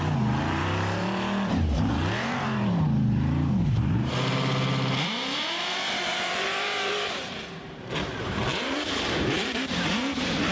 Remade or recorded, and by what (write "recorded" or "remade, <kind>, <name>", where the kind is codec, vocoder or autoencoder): remade, vocoder, BigVGAN v2